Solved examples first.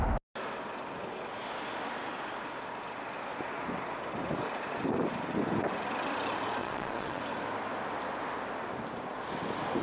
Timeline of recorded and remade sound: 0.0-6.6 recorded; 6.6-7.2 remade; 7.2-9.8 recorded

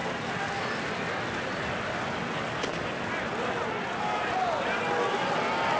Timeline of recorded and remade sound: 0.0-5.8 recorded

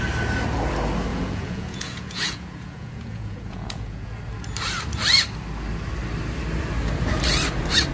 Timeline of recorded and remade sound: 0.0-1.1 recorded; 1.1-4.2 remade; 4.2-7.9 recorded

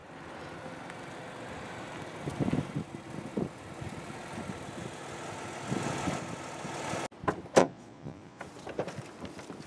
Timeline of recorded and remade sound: 0.0-7.6 recorded; 7.6-8.4 remade; 8.4-9.7 recorded

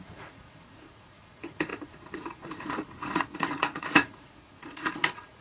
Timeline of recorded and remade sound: 0.0-5.4 remade

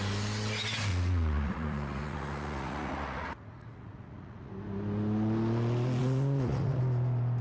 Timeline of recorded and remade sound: 0.0-0.9 recorded; 0.9-4.5 remade; 4.5-6.0 recorded; 6.0-6.8 remade; 6.8-7.4 recorded